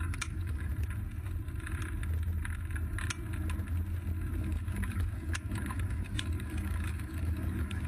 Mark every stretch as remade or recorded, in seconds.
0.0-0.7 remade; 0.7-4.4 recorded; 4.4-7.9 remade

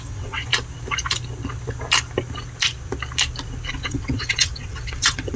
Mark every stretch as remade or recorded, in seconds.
0.0-0.5 remade; 0.5-3.7 recorded; 3.7-5.4 remade

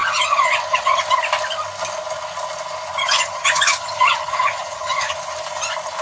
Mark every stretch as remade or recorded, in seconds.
0.0-1.0 remade; 1.0-3.0 recorded; 3.0-5.1 remade; 5.1-6.0 recorded

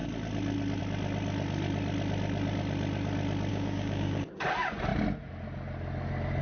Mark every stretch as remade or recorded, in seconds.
0.0-3.5 recorded; 3.5-4.4 remade; 4.4-6.4 recorded

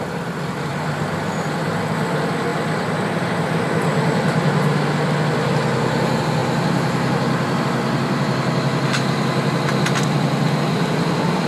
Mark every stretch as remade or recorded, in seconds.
0.0-11.5 recorded

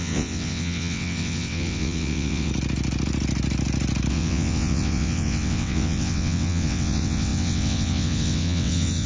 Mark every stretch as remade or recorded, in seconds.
0.0-2.5 remade; 2.5-4.1 recorded; 4.1-9.1 remade